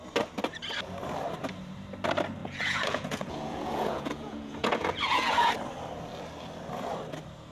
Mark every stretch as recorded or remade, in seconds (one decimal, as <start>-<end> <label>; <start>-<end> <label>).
0.0-2.4 recorded; 2.4-5.5 remade; 5.5-7.5 recorded